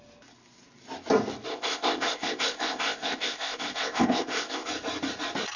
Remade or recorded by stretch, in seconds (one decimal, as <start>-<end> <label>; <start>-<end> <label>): 0.0-1.5 recorded; 1.5-4.7 remade; 4.7-5.6 recorded